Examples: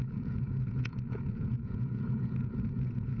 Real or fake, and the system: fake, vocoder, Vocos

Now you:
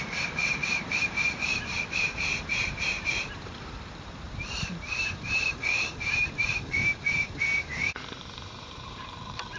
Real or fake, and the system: fake, vocoder, BigVGAN v2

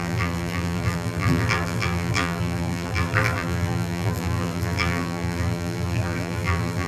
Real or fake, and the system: fake, vocoder, BigVGAN v2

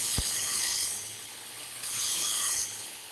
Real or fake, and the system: fake, codec, HILCodec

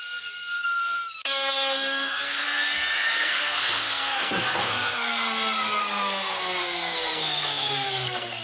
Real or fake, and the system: fake, codec, SNAC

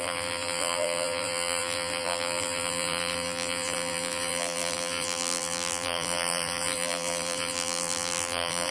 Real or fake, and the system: fake, vocoder, BigVGAN v2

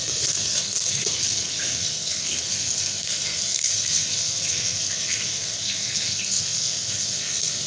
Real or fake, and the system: fake, codec, SNAC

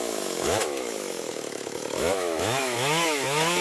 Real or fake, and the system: fake, autoencoder, DAC-VAE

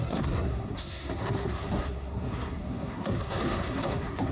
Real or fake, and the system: fake, codec, SNAC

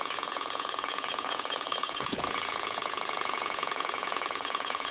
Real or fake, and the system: fake, vocoder, Vocos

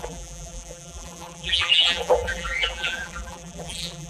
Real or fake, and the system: fake, vocoder, BigVGAN v2